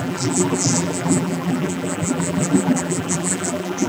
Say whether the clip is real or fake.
fake